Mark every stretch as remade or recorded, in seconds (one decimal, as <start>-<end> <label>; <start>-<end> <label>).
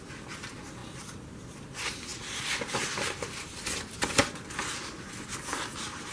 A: 0.0-6.1 recorded